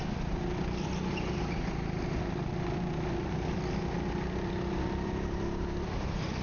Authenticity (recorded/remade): recorded